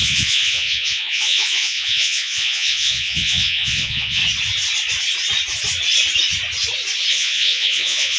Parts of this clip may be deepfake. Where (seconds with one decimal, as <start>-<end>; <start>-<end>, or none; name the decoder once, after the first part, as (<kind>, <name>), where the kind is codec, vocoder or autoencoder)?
0.0-4.2 (vocoder, Vocos); 7.1-8.2